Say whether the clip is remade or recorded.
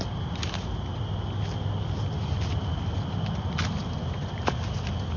recorded